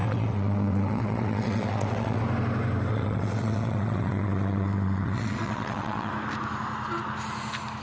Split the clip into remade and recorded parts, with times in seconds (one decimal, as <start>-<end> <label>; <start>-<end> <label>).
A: 0.0-2.2 remade; 2.2-2.9 recorded; 2.9-6.1 remade; 6.1-7.8 recorded